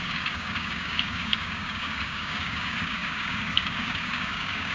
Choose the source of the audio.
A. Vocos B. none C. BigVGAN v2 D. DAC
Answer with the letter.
D